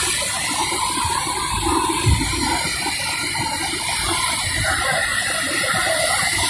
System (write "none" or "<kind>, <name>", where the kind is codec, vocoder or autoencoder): vocoder, BigVGAN v2